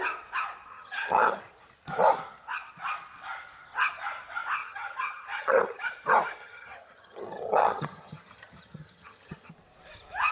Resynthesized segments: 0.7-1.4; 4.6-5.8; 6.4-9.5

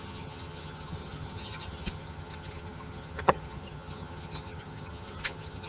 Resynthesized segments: 0.0-5.7

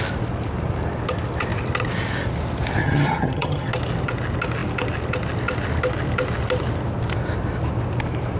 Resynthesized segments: 2.8-3.7

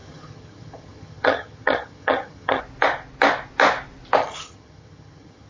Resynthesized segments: 0.0-2.6; 4.2-5.5

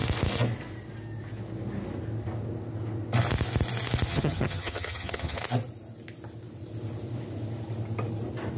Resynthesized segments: 4.1-5.4

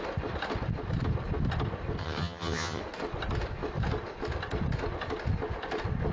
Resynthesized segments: 2.0-2.8